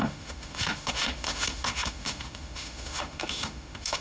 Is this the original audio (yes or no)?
no